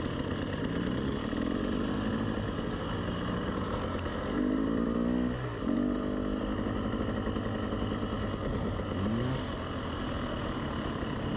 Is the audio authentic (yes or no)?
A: yes